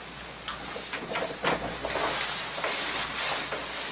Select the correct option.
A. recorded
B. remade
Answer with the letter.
A